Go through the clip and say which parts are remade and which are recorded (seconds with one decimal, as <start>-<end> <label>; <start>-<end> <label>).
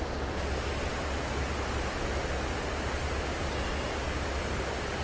0.0-5.0 recorded